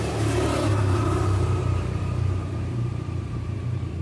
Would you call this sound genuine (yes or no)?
no